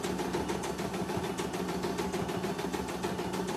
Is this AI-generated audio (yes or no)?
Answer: no